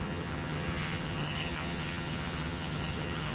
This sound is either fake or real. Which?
fake